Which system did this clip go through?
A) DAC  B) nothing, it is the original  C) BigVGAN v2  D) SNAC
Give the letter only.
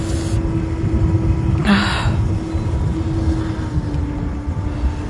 B